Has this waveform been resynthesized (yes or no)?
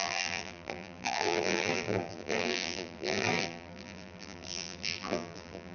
yes